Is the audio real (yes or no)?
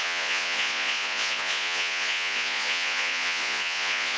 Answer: no